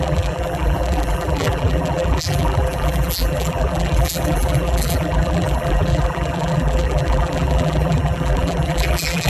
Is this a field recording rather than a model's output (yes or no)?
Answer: no